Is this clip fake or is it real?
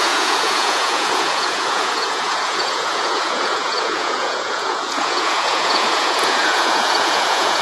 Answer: fake